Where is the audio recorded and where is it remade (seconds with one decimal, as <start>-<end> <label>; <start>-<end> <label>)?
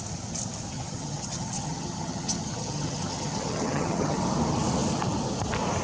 0.0-0.7 recorded; 0.7-4.2 remade; 4.2-5.8 recorded